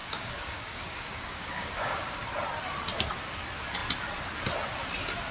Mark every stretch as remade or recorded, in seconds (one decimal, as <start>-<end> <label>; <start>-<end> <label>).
0.0-2.2 remade; 2.2-5.3 recorded